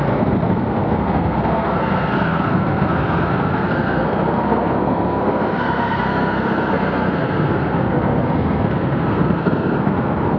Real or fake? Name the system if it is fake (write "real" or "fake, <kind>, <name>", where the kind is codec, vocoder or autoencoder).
fake, codec, SNAC